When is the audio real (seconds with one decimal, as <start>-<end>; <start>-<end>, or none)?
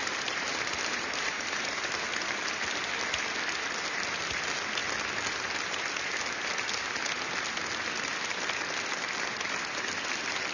1.8-10.5